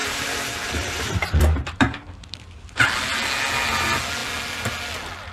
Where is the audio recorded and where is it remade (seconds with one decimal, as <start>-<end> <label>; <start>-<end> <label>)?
0.0-2.3 remade; 2.3-5.3 recorded